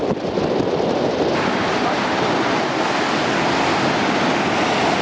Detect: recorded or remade recorded